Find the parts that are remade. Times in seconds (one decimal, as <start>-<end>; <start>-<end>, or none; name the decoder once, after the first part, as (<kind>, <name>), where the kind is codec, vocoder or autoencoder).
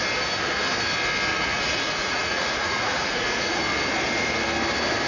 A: 1.3-3.6 (vocoder, Vocos)